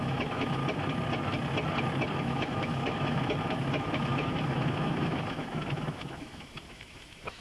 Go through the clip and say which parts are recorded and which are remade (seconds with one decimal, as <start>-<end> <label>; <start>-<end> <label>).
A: 0.0-0.6 remade; 0.6-2.2 recorded; 2.2-7.4 remade